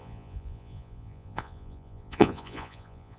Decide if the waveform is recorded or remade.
remade